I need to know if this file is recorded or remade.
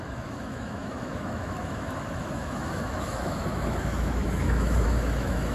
remade